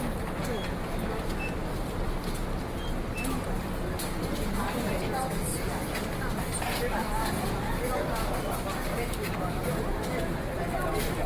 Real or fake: real